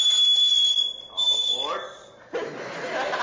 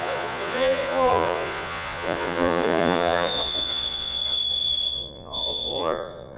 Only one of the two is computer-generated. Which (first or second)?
second